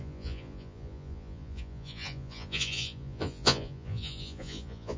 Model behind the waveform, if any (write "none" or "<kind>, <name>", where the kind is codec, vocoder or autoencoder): vocoder, Vocos